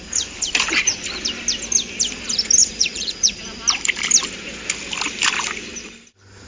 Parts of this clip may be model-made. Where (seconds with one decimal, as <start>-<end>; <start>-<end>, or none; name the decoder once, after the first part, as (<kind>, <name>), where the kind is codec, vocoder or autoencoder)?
2.6-3.3 (vocoder, Vocos)